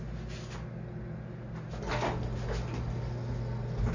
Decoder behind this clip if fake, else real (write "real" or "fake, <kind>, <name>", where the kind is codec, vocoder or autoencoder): real